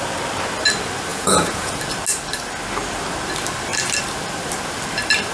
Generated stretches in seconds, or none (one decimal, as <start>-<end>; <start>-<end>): 1.1-1.7